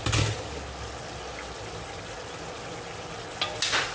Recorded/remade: recorded